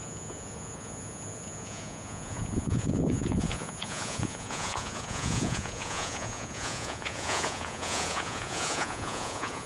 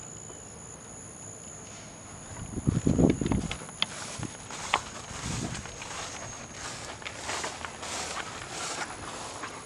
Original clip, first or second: second